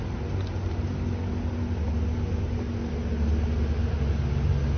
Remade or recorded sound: recorded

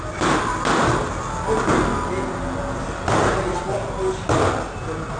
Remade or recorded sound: recorded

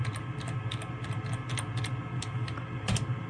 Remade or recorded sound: recorded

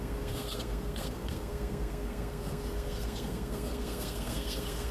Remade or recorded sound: remade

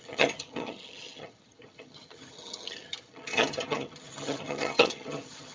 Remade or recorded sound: remade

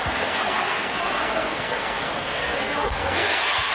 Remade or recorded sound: remade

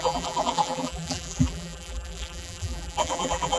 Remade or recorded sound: remade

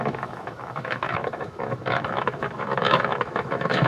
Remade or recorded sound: remade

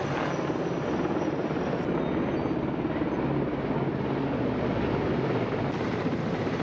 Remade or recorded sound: recorded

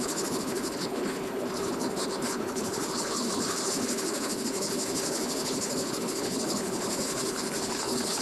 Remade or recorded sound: remade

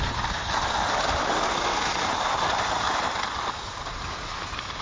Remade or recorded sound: recorded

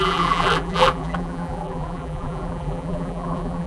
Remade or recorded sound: remade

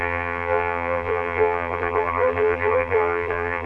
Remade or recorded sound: remade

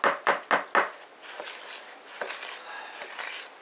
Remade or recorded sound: recorded